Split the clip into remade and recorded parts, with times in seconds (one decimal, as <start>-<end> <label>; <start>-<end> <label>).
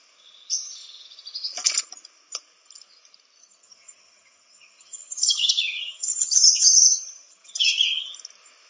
0.0-3.4 recorded; 3.4-8.1 remade; 8.1-8.7 recorded